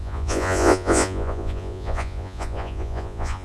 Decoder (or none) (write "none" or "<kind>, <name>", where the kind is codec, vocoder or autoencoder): vocoder, Vocos